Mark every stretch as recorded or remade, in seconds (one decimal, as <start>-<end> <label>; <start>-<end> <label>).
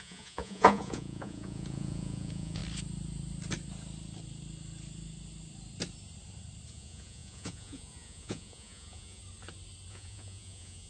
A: 0.0-2.6 remade; 2.6-6.7 recorded; 6.7-9.2 remade; 9.2-9.9 recorded; 9.9-10.9 remade